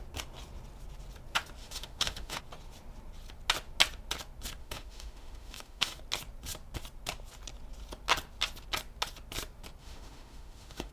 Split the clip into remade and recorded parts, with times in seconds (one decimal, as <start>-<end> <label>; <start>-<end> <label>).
0.0-1.6 recorded; 1.6-2.4 remade; 2.4-4.6 recorded; 4.6-6.0 remade; 6.0-9.8 recorded; 9.8-10.9 remade